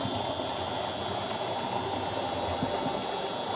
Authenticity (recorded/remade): recorded